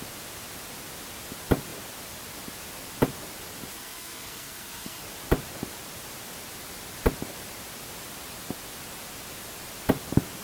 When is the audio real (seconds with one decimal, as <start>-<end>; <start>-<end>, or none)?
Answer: 0.0-3.7; 5.0-10.4